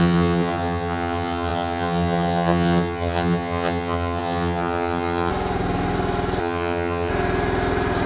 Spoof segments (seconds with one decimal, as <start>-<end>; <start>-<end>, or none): 0.0-5.3; 6.4-7.1